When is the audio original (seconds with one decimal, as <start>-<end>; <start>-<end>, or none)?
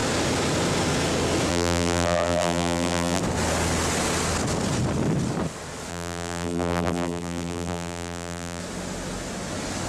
0.0-1.5; 3.2-5.9; 8.6-9.9